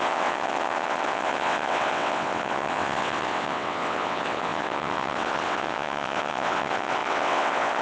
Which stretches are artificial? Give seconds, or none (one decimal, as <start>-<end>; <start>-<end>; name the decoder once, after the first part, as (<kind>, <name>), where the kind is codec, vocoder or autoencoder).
0.0-7.8 (vocoder, WaveNeXt)